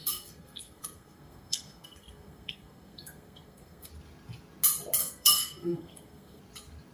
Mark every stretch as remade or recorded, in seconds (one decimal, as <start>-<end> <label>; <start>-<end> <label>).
0.0-3.9 remade; 3.9-5.0 recorded; 5.0-6.4 remade; 6.4-6.9 recorded